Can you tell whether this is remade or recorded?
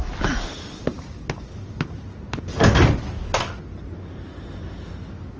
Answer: recorded